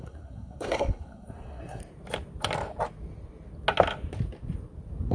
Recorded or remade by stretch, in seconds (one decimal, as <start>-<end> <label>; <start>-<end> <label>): 0.0-1.8 remade; 1.8-5.1 recorded